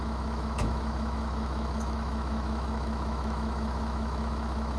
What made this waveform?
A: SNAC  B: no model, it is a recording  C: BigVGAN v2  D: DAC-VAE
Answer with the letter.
D